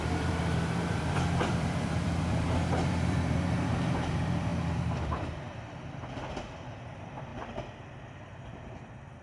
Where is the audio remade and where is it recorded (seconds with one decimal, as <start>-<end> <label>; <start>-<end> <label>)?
0.0-7.3 remade; 7.3-7.9 recorded; 7.9-9.2 remade